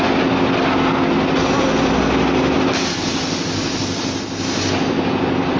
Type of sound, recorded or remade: recorded